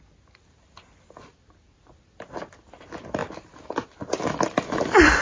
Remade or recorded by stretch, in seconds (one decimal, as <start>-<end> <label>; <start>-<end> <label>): 0.0-5.2 recorded